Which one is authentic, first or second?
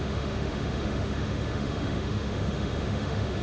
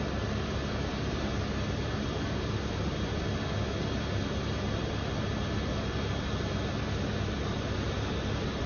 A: second